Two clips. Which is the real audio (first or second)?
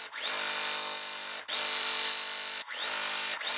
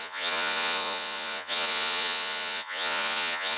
first